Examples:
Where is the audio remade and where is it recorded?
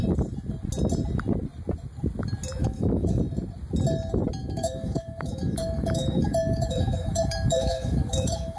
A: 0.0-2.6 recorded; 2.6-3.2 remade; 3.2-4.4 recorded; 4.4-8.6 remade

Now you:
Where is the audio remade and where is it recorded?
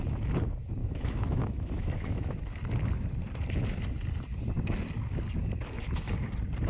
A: 0.0-0.8 recorded; 0.8-2.4 remade; 2.4-6.7 recorded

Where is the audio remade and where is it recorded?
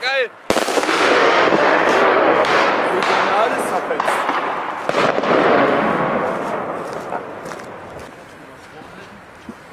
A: 0.0-0.7 recorded; 0.7-2.7 remade; 2.7-5.5 recorded; 5.5-6.6 remade; 6.6-9.7 recorded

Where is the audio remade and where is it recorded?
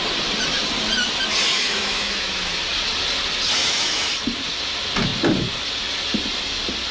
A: 0.0-1.5 recorded; 1.5-2.6 remade; 2.6-3.6 recorded; 3.6-4.1 remade; 4.1-6.9 recorded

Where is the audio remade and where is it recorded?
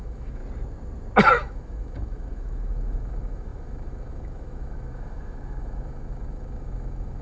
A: 0.0-0.4 remade; 0.4-1.3 recorded; 1.3-7.2 remade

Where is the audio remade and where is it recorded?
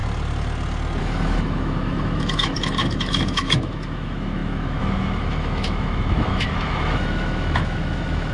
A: 0.0-1.0 recorded; 1.0-8.3 remade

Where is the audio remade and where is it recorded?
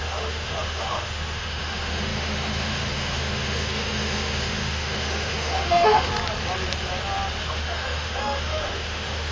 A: 0.0-6.1 remade; 6.1-7.4 recorded; 7.4-9.3 remade